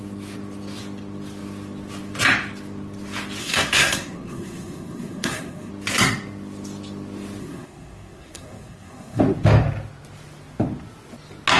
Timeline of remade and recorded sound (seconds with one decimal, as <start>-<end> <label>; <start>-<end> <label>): 0.0-3.4 recorded; 3.4-5.7 remade; 5.7-7.4 recorded; 7.4-9.2 remade; 9.2-11.6 recorded